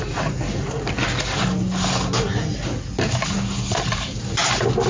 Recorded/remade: recorded